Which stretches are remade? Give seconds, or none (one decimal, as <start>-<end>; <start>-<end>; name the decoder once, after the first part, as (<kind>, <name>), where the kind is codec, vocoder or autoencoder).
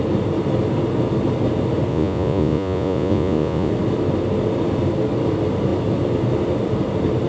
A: 1.9-3.7 (vocoder, Vocos)